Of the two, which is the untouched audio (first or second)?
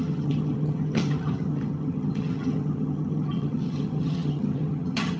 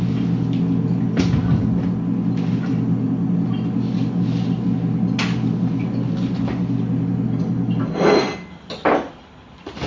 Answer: second